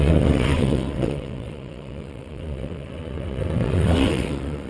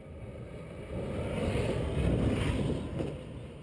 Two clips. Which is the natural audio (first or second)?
second